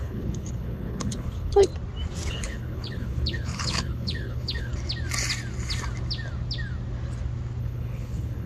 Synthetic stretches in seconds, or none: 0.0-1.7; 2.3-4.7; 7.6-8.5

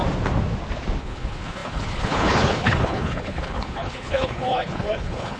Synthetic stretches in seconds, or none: 1.0-5.4